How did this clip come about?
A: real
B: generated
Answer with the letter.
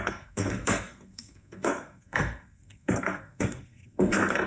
B